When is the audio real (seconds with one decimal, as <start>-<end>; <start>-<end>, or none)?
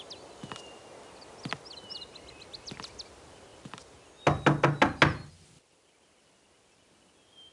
0.0-7.5